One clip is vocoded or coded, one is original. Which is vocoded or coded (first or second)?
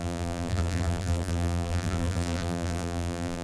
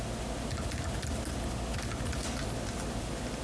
first